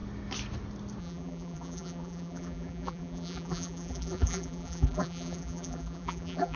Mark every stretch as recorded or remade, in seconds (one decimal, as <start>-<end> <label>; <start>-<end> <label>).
0.0-1.0 recorded; 1.0-6.6 remade